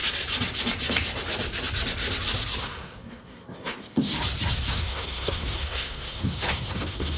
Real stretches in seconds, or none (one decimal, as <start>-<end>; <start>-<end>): 0.0-2.6; 4.1-4.7